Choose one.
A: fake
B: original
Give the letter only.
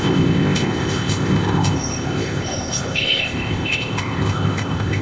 A